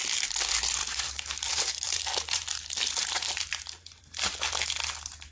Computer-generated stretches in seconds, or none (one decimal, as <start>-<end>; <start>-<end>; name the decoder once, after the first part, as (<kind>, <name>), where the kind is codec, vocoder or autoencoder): 0.8-2.6 (vocoder, BigVGAN v2); 3.0-4.2